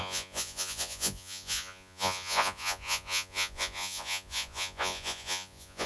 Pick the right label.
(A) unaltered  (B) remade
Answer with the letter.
B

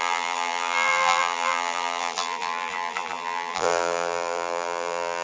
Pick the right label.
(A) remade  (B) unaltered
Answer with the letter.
A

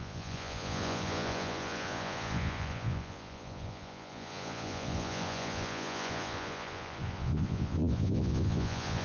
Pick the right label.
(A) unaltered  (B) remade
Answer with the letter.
B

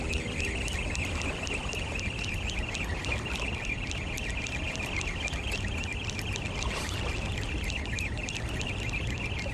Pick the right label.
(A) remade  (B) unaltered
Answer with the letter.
B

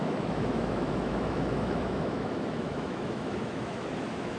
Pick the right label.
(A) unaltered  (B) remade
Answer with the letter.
B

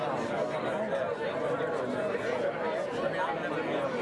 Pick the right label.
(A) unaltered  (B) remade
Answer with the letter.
A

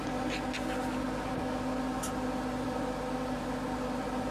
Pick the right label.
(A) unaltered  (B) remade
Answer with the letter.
A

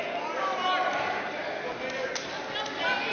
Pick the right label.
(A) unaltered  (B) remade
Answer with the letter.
A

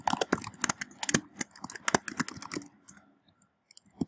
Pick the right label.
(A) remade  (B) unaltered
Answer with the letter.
B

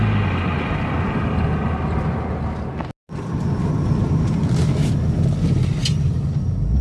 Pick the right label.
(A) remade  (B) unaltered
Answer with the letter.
B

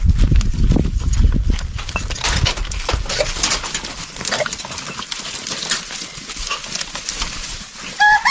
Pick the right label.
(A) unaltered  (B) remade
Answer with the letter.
A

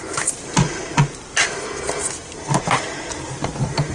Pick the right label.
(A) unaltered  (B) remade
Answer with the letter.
A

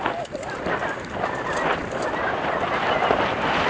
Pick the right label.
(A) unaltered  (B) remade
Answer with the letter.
A